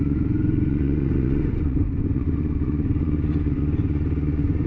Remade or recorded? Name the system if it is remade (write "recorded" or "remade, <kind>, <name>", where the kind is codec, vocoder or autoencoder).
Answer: remade, vocoder, Vocos